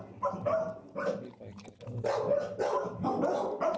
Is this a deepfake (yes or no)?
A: no